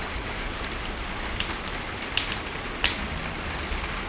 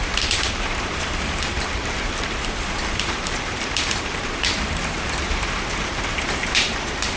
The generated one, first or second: second